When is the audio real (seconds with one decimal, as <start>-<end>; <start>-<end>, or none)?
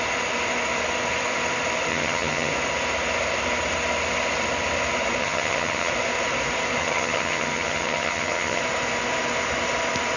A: 0.0-1.9; 2.5-5.2; 5.9-6.8; 8.6-10.2